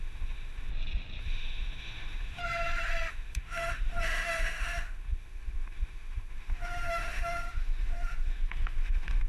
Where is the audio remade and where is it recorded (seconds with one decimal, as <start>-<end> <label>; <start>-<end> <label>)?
0.0-0.7 remade; 0.7-1.2 recorded; 1.2-2.4 remade; 2.4-3.1 recorded; 3.1-9.3 remade